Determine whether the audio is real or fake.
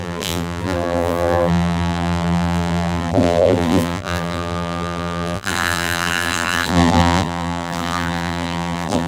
fake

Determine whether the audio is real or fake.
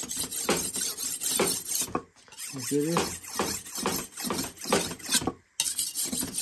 real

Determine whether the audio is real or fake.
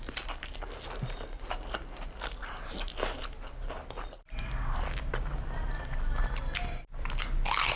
real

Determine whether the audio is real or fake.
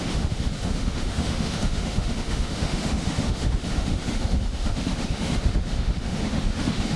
fake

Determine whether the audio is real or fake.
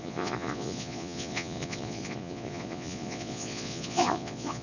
fake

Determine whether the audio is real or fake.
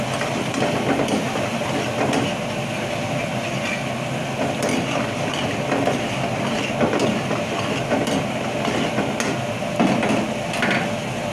real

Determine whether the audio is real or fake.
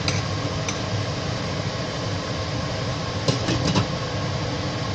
real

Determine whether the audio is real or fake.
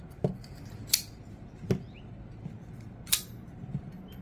real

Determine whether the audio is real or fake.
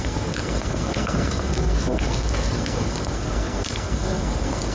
fake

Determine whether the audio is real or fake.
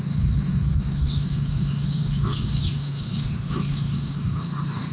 fake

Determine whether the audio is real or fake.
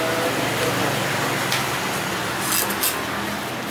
real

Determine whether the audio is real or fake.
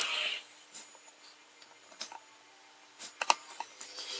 real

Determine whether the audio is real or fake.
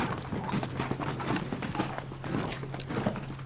real